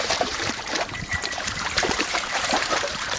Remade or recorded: remade